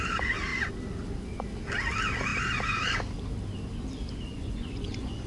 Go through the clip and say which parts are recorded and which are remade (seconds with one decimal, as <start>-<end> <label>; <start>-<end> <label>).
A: 0.0-4.3 recorded; 4.3-5.3 remade